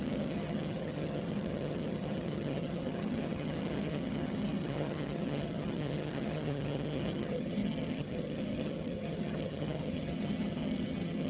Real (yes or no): no